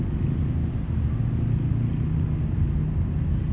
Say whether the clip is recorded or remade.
recorded